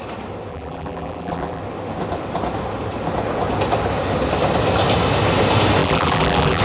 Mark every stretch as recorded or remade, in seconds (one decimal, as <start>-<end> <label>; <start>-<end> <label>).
0.0-0.5 recorded; 0.5-1.6 remade; 1.6-5.8 recorded; 5.8-6.6 remade